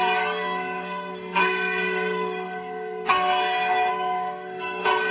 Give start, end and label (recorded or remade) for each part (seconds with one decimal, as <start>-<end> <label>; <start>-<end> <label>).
0.0-5.1 remade